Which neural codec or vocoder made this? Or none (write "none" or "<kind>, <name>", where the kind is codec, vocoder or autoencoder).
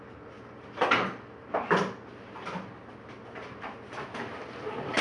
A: none